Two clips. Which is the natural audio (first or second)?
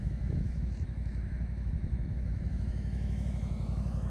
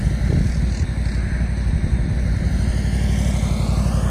second